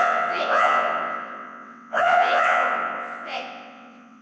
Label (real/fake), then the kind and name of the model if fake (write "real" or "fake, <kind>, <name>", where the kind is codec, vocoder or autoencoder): fake, vocoder, WaveNeXt